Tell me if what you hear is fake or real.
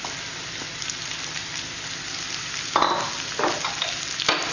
real